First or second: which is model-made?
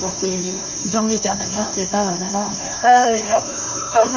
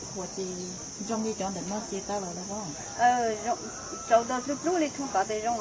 first